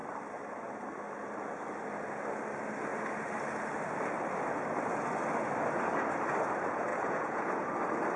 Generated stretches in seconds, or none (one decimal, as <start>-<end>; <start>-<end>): 6.9-7.4